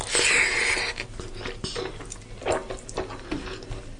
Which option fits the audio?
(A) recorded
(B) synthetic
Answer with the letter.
A